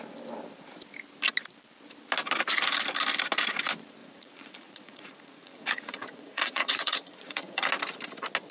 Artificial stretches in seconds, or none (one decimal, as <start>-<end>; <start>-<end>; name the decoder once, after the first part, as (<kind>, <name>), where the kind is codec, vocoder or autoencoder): 4.0-7.7 (vocoder, Vocos)